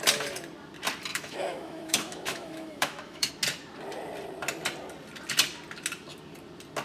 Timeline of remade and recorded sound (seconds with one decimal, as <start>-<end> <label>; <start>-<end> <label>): 0.0-1.1 recorded; 1.1-3.3 remade; 3.3-6.8 recorded